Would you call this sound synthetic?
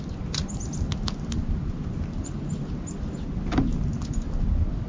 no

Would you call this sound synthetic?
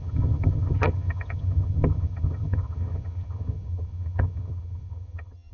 yes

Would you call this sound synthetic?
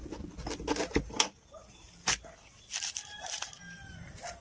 no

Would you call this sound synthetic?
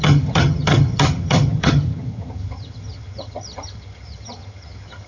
yes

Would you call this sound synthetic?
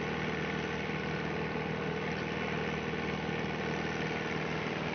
no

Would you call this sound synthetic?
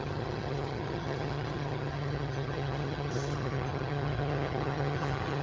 yes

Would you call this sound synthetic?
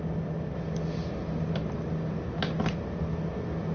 no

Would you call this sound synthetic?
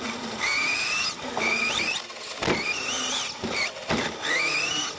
no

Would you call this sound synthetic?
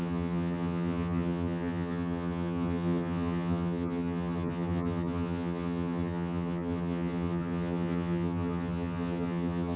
yes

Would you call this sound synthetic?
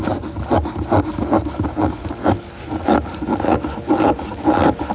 no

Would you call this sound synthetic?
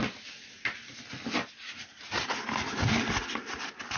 no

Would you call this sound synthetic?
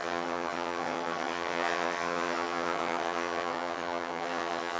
yes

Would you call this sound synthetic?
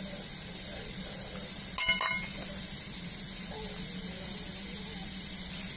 no